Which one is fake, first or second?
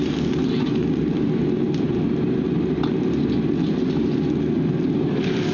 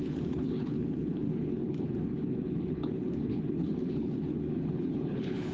second